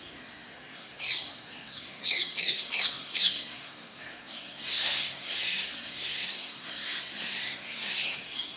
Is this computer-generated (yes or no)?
yes